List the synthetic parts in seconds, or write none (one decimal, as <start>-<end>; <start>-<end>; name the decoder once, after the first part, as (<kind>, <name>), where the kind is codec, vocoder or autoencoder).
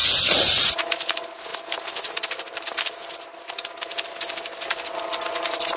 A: none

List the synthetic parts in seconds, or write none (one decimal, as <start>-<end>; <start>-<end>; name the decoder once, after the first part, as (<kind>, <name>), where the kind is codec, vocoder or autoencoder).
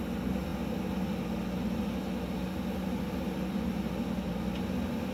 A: none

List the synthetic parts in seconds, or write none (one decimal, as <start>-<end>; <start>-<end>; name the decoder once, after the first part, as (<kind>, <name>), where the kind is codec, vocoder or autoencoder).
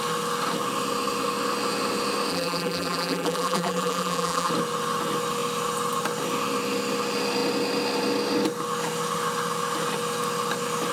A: 2.3-4.5 (vocoder, BigVGAN v2)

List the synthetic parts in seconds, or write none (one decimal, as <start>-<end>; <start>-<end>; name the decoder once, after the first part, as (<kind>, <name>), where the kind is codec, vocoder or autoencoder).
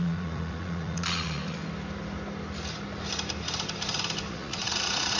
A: 0.0-1.6 (vocoder, Vocos); 4.3-5.2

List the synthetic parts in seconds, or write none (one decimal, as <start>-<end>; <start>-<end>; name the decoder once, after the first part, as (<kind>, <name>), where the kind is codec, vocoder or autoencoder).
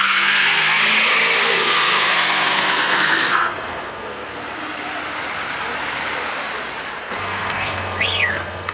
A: 0.0-0.8 (codec, SNAC); 1.5-4.4; 7.0-8.7